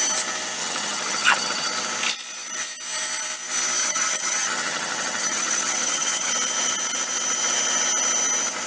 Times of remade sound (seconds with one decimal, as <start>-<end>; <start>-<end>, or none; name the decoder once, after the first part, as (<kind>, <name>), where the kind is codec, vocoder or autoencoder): 0.6-1.7 (vocoder, HiFi-GAN); 3.8-6.3